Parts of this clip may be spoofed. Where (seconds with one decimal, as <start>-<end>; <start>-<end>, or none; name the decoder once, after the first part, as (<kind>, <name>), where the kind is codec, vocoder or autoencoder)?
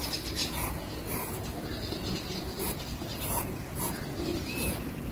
0.4-1.1 (vocoder, Vocos); 3.1-4.0; 4.4-5.1